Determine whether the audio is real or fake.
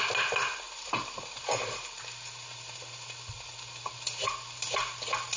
real